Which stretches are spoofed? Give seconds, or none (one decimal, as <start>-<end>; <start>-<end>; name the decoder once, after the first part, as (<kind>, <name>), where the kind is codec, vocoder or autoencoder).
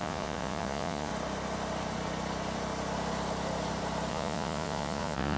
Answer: 0.0-1.1 (vocoder, Vocos); 4.1-5.4